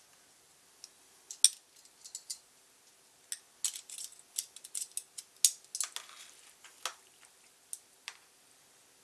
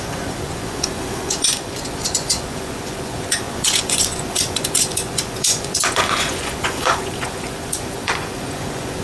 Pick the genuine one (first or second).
first